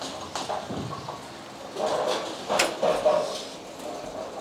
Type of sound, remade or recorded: recorded